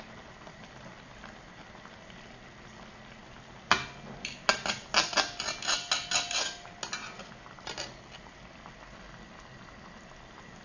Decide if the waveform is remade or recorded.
recorded